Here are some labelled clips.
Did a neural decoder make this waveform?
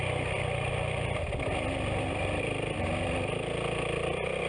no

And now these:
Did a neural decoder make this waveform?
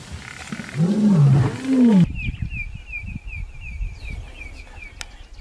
no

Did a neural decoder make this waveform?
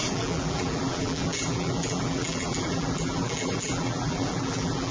yes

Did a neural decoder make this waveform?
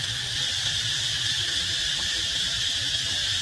no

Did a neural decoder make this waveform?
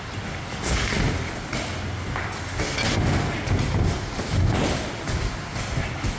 no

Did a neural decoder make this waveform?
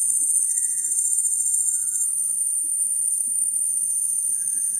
yes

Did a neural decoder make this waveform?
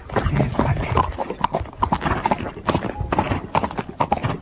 no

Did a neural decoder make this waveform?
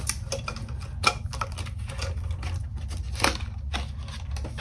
no